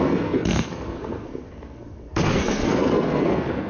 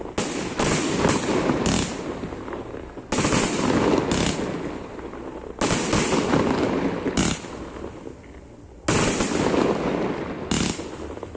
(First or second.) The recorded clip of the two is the second